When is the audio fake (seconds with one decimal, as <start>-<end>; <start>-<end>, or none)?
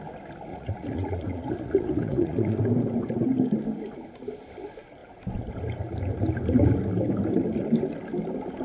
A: 0.5-2.6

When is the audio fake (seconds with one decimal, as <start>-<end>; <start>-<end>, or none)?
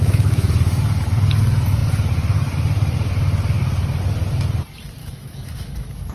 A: 0.0-0.5; 5.0-6.1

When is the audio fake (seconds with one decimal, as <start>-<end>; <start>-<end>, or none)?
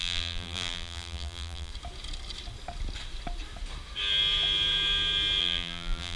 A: 0.0-1.7; 5.4-6.2